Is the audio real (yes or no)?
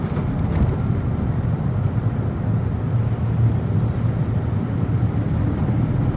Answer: yes